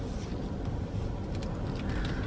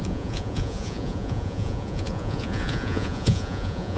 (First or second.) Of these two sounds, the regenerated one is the second